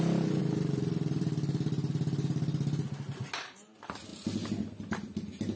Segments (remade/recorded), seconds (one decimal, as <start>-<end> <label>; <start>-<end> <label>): 0.0-0.4 recorded; 0.4-1.9 remade; 1.9-5.6 recorded